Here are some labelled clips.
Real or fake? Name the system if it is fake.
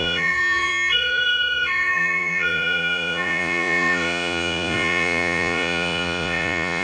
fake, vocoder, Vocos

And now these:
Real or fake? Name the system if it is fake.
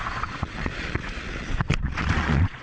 fake, vocoder, Vocos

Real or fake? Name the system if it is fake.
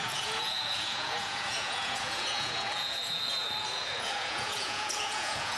fake, vocoder, Vocos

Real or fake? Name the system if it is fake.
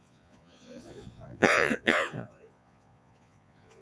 fake, vocoder, Vocos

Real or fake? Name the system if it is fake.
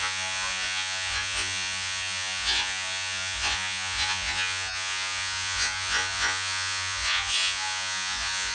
fake, vocoder, Vocos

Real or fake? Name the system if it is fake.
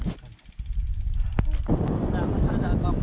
real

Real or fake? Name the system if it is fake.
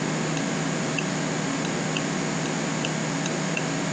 real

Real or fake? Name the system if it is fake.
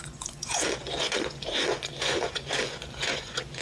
fake, vocoder, Vocos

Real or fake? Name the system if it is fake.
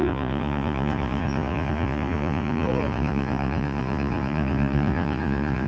fake, vocoder, Vocos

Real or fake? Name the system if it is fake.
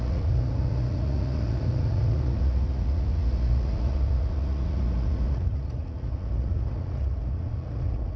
fake, vocoder, Vocos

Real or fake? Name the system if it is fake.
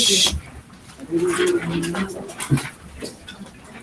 real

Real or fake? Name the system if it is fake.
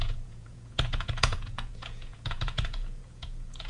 fake, vocoder, Vocos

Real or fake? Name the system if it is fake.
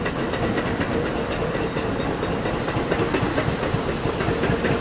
real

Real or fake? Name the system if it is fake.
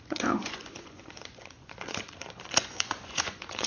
fake, vocoder, Vocos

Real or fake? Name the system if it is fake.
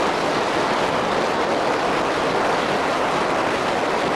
real